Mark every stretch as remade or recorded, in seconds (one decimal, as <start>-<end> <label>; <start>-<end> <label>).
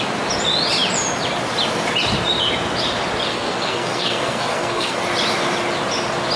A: 0.0-3.3 recorded; 3.3-5.0 remade; 5.0-6.4 recorded